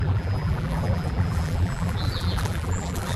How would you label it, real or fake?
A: fake